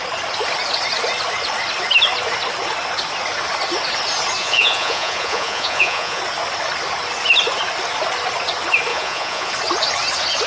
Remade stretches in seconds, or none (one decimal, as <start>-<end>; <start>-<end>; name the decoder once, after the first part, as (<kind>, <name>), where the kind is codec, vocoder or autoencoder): 4.4-6.2 (vocoder, Vocos); 8.9-9.5